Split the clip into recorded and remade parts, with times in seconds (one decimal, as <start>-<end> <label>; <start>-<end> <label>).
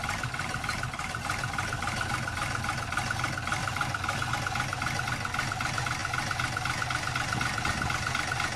0.0-2.1 remade; 2.1-3.6 recorded; 3.6-4.3 remade; 4.3-8.6 recorded